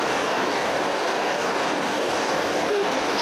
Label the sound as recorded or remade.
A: remade